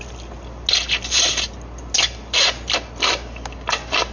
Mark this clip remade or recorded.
recorded